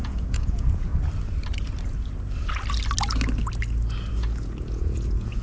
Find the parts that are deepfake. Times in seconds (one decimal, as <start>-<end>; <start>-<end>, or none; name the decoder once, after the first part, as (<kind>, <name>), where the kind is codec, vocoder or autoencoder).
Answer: 0.0-0.9 (vocoder, Vocos); 4.1-5.4